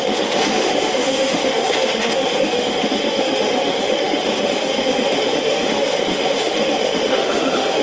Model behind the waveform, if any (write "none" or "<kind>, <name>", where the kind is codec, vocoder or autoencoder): autoencoder, DAC-VAE